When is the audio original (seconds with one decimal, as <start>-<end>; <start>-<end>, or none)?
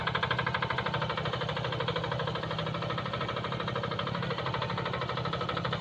0.0-5.8